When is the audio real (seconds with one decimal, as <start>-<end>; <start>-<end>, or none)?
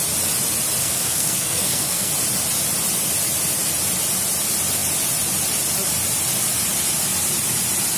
0.0-0.8; 2.1-8.0